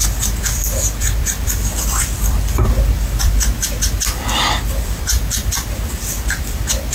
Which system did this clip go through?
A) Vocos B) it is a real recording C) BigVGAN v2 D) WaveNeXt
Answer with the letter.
C